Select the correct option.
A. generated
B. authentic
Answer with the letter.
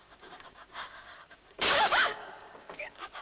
A